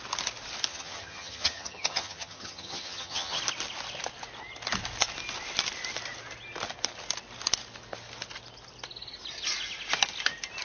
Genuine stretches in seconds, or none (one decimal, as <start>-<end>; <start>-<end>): 0.0-0.7; 3.4-10.6

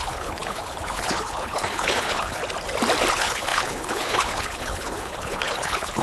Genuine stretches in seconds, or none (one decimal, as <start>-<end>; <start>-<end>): 2.4-3.1